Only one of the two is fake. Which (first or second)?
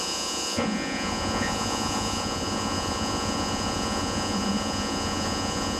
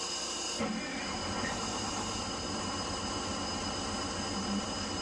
first